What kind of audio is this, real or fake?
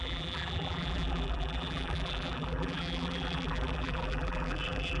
fake